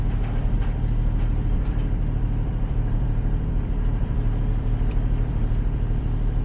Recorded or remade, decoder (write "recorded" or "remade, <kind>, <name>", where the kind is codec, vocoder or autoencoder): remade, vocoder, BigVGAN v2